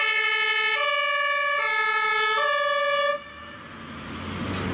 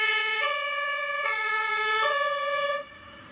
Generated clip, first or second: second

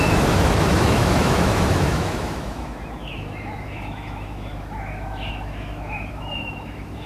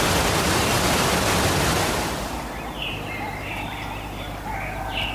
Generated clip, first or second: first